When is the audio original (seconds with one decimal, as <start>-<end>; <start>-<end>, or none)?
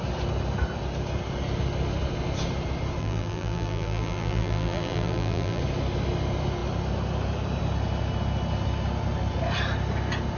0.0-3.0; 5.6-10.4